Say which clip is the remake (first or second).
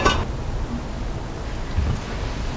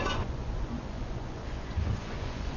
second